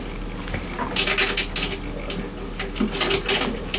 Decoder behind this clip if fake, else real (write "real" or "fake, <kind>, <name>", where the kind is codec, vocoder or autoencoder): real